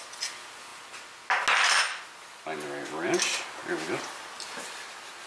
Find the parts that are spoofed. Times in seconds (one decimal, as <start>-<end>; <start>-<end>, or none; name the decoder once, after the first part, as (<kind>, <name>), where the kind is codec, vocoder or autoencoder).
none